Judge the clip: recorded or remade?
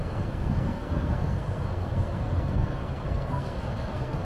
remade